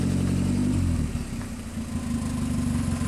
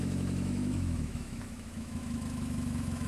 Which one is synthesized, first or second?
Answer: second